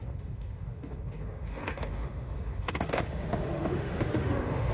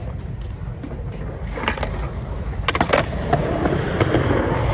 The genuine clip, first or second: second